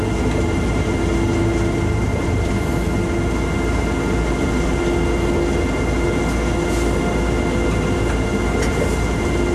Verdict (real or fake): real